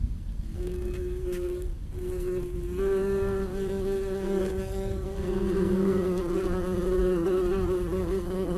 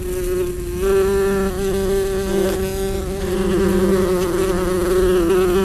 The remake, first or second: first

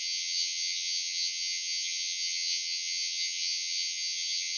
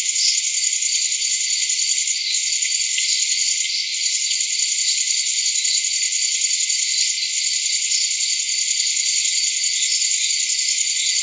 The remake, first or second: first